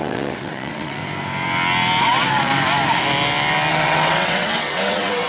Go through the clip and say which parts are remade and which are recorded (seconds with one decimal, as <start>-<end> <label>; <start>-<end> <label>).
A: 0.0-1.0 remade; 1.0-2.0 recorded; 2.0-2.5 remade; 2.5-3.7 recorded; 3.7-5.3 remade